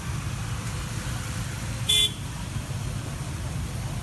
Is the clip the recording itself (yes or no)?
yes